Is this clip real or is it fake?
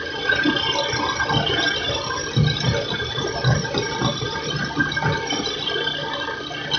real